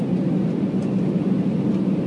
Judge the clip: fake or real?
real